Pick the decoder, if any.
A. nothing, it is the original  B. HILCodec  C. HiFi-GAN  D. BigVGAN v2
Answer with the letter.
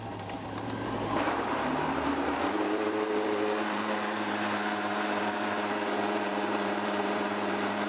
D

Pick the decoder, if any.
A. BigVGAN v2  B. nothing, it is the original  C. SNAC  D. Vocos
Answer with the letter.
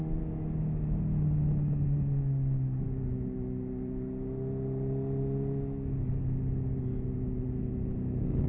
B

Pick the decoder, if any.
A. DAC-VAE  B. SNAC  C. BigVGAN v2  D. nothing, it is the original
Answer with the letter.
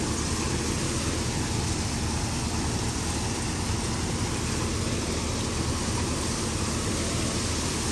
D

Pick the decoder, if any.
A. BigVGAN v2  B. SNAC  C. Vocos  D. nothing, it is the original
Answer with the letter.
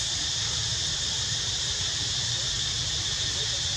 A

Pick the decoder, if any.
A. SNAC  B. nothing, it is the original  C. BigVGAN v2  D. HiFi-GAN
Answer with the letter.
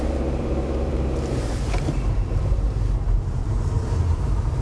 C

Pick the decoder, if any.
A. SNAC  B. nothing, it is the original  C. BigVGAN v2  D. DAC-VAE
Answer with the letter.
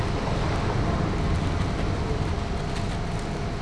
B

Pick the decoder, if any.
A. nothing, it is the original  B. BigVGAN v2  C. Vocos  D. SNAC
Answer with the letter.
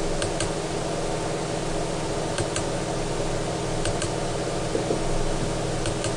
A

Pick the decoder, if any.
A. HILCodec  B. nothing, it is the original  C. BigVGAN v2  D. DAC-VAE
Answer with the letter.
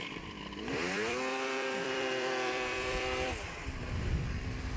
C